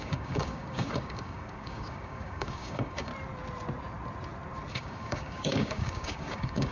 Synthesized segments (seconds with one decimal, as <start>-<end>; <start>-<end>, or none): 0.0-3.1; 4.7-6.7